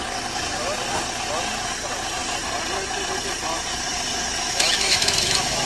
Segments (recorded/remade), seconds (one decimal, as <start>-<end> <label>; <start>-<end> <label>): 0.0-4.4 recorded; 4.4-5.7 remade